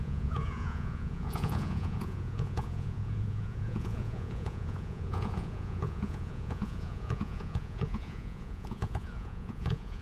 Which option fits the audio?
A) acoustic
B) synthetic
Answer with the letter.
B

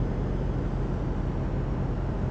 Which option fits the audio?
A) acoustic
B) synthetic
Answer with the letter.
A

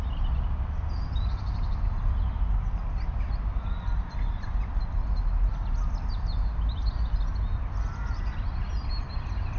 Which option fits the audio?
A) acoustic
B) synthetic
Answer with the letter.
A